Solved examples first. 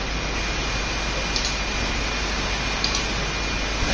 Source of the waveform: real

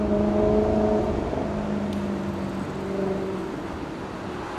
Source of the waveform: real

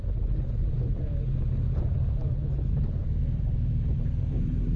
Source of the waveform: fake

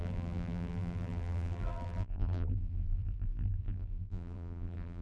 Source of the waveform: fake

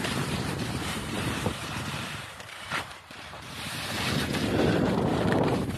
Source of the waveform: fake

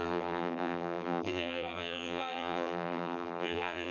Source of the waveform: fake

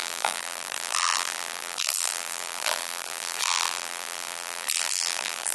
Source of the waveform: fake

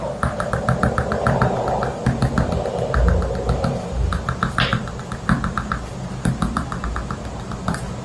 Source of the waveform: real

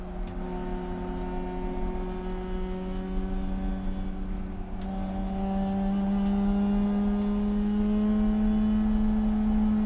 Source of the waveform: real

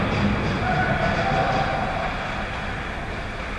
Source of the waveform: real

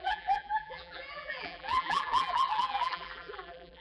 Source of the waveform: fake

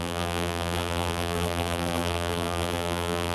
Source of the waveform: fake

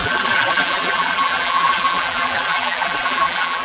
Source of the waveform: fake